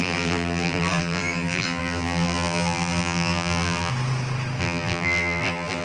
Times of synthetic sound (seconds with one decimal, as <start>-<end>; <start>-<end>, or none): 0.0-3.9; 4.6-5.8